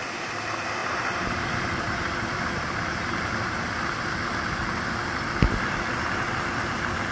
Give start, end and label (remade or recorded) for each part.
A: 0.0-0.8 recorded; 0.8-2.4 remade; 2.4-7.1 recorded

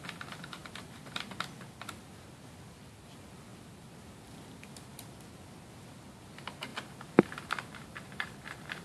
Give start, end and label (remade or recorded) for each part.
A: 0.0-8.8 recorded

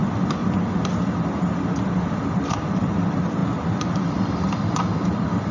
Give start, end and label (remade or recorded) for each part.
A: 0.0-0.4 remade; 0.4-2.5 recorded; 2.5-5.5 remade

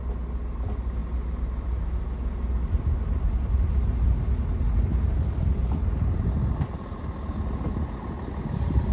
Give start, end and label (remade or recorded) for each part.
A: 0.0-8.9 recorded

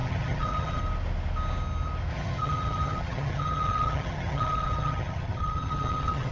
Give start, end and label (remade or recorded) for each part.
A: 0.0-0.8 remade; 0.8-2.1 recorded; 2.1-6.3 remade